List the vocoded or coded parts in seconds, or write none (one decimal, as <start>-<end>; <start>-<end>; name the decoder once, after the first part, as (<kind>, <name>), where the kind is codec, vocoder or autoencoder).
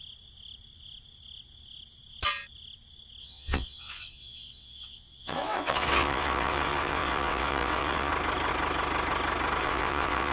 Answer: 3.2-8.1 (vocoder, WaveNeXt); 9.6-10.3